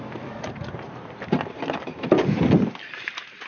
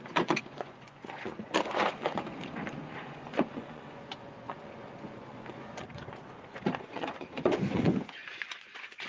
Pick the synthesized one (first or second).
second